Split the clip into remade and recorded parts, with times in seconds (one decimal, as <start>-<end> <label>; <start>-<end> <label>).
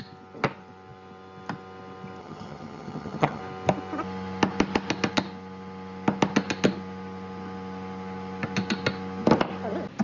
0.0-2.2 recorded; 2.2-3.4 remade; 3.4-10.0 recorded